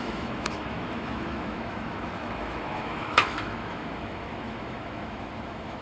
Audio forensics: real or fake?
fake